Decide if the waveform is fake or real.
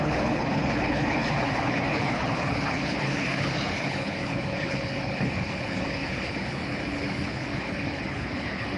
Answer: fake